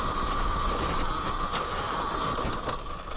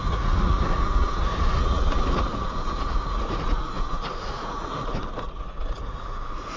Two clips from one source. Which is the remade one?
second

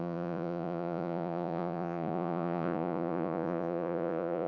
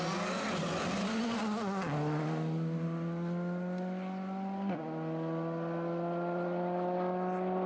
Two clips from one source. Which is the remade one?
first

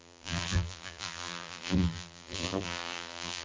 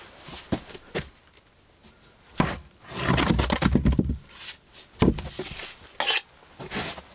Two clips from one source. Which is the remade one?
first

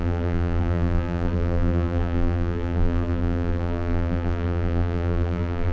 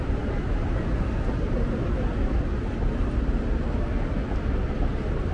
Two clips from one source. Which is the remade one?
first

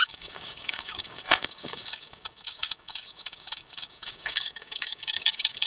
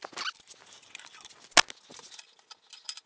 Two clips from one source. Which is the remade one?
first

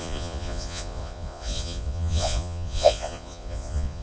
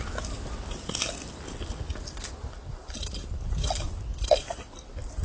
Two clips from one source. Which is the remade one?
first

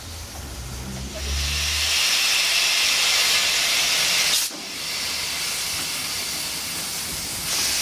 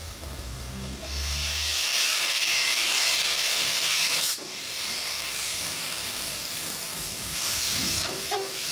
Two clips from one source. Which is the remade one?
second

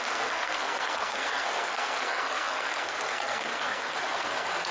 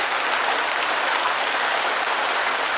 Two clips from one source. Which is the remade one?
first